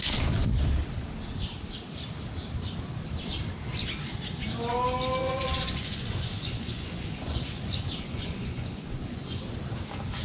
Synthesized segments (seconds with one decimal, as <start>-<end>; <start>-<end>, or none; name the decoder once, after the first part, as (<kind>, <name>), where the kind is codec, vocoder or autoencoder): 5.2-9.4 (vocoder, Vocos)